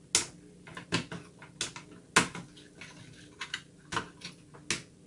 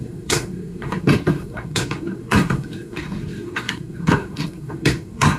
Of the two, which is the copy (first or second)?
second